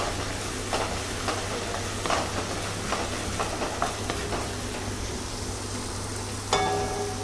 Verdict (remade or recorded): recorded